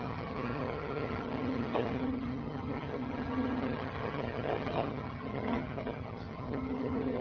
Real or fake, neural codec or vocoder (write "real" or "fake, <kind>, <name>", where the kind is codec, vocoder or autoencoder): fake, vocoder, HiFi-GAN